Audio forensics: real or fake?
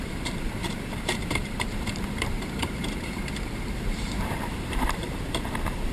fake